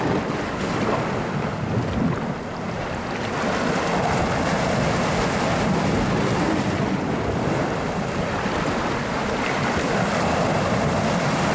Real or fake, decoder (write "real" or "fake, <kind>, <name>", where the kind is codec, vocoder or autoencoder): real